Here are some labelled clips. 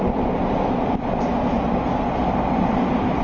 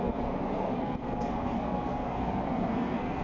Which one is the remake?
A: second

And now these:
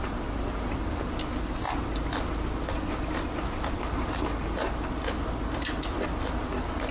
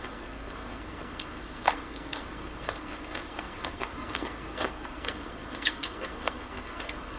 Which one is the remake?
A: second